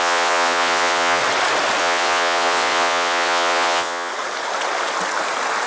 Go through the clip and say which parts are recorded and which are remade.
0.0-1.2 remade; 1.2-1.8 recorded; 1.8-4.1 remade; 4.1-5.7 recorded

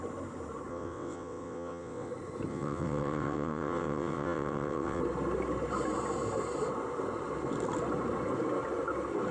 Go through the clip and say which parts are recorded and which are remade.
0.0-0.7 recorded; 0.7-2.1 remade; 2.1-2.5 recorded; 2.5-5.0 remade; 5.0-9.3 recorded

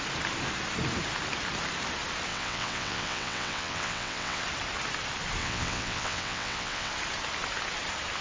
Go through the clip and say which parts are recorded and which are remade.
0.0-2.3 recorded; 2.3-4.4 remade; 4.4-5.4 recorded; 5.4-6.9 remade; 6.9-8.2 recorded